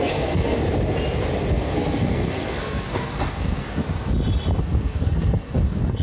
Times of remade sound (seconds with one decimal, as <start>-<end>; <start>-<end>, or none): 0.0-0.6; 1.5-3.8; 4.6-6.0